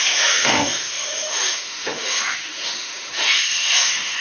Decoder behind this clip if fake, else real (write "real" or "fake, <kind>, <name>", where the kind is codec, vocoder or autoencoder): fake, autoencoder, DAC-VAE